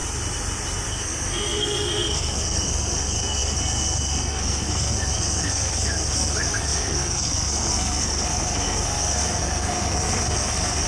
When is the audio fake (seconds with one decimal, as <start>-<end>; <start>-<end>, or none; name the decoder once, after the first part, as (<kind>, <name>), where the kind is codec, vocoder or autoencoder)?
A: 0.9-10.9 (codec, SNAC)